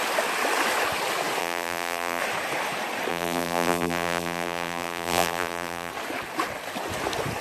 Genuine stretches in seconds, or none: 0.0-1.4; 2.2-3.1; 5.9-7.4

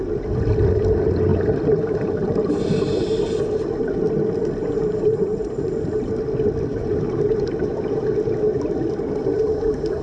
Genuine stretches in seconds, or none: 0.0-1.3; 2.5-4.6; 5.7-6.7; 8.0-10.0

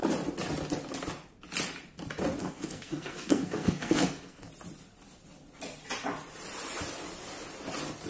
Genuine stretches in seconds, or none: 0.0-2.4; 4.5-8.1

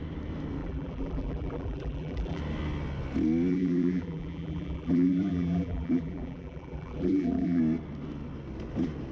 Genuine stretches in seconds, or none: 0.0-0.6; 2.4-3.5; 7.6-9.1

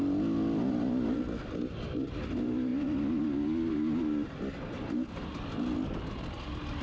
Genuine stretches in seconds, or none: 0.0-6.8

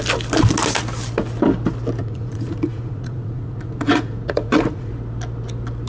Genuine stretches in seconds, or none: 0.0-2.0; 4.9-5.9

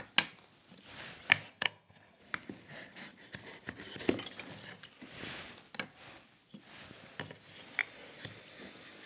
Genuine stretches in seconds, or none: 0.0-1.5; 2.2-9.1

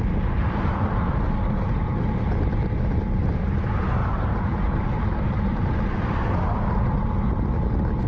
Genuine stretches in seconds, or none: 0.0-0.4; 1.1-4.0; 5.6-8.1